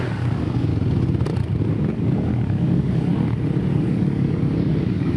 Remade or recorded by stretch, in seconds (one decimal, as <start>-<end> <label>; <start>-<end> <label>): 0.0-0.7 remade; 0.7-1.9 recorded; 1.9-3.1 remade; 3.1-3.7 recorded; 3.7-5.2 remade